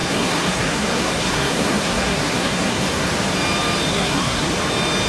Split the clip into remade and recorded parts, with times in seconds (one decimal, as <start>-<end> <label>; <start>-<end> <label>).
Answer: 0.0-3.1 remade; 3.1-3.9 recorded; 3.9-4.5 remade; 4.5-5.1 recorded